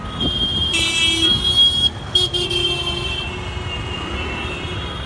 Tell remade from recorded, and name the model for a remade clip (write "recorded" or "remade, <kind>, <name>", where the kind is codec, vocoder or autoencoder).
recorded